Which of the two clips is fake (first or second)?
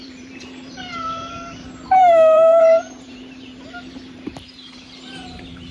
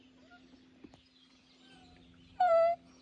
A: first